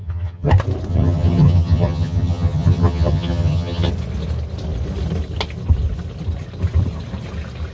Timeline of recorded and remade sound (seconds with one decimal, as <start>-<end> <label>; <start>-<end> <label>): 0.0-0.5 remade; 0.5-0.9 recorded; 0.9-3.9 remade; 3.9-7.7 recorded